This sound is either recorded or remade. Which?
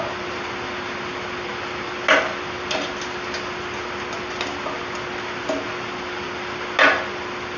recorded